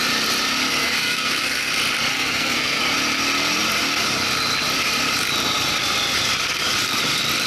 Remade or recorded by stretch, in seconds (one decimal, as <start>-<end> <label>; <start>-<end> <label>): 0.0-0.8 recorded; 0.8-1.7 remade; 1.7-2.1 recorded; 2.1-2.8 remade; 2.8-7.5 recorded